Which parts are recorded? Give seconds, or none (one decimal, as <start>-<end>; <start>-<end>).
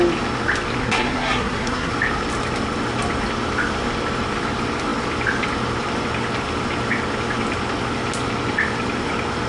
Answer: 0.0-0.8; 1.9-9.5